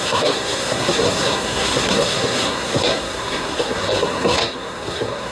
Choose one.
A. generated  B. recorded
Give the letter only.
A